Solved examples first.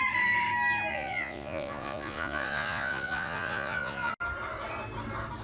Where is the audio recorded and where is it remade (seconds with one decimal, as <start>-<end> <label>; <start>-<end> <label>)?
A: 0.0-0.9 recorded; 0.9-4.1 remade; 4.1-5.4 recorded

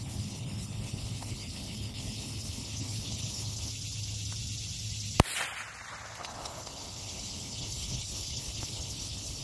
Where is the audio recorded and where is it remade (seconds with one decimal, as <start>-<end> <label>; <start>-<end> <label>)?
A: 0.0-3.7 remade; 3.7-6.2 recorded; 6.2-9.4 remade

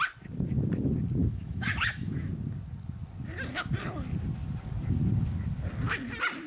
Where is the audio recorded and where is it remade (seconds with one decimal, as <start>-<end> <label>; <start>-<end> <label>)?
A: 0.0-1.2 recorded; 1.2-2.3 remade; 2.3-6.5 recorded